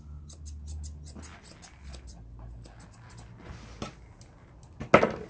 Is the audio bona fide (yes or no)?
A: yes